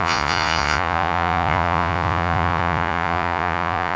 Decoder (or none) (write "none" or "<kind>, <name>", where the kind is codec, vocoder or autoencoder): vocoder, Vocos